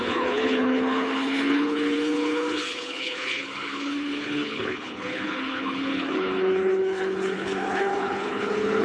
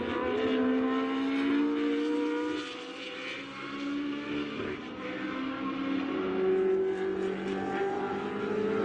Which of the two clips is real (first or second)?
second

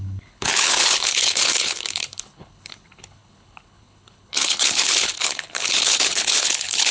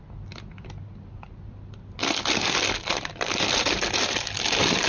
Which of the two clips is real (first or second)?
second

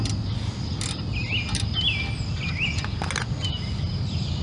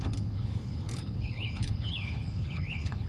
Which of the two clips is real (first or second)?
first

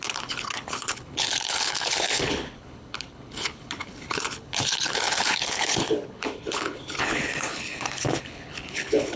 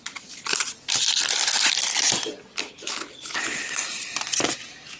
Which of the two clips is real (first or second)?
second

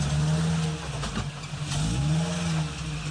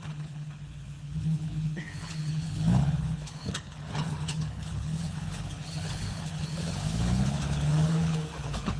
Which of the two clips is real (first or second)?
first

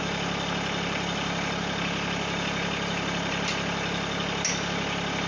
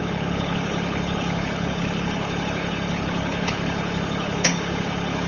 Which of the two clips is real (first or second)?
first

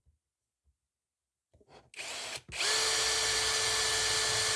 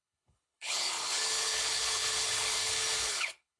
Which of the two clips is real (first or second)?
first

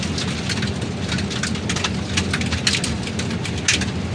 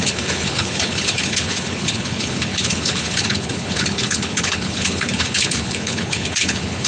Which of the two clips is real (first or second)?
first